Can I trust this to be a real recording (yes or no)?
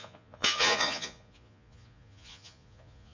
no